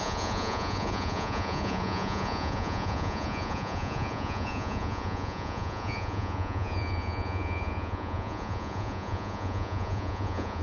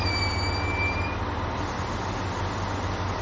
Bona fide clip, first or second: second